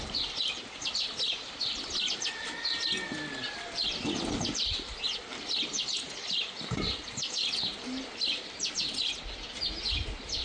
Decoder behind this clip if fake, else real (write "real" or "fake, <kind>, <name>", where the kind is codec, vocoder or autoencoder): real